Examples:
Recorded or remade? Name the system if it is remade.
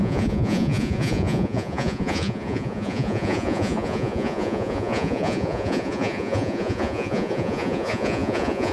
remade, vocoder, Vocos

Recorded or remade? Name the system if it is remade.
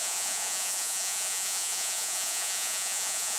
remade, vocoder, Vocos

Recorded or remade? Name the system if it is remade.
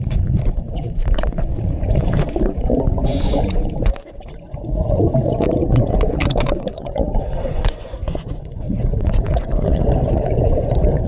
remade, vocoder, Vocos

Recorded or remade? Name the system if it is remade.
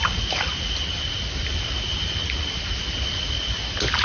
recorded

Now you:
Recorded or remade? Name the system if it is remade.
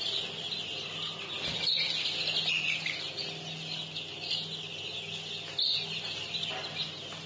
recorded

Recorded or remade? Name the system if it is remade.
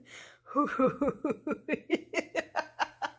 remade, vocoder, Vocos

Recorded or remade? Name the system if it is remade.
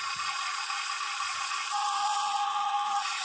remade, vocoder, Vocos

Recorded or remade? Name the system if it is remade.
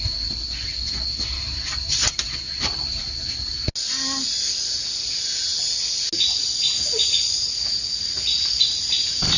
recorded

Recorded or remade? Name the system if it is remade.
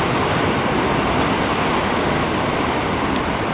recorded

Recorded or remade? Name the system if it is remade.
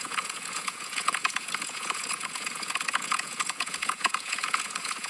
remade, vocoder, Vocos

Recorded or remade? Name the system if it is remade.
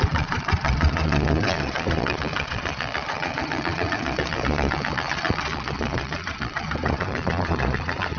remade, vocoder, Vocos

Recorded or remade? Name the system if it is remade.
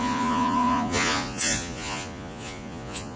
remade, vocoder, Vocos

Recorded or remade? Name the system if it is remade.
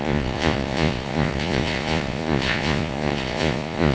remade, vocoder, Vocos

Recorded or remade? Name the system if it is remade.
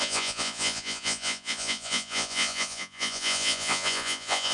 remade, vocoder, Vocos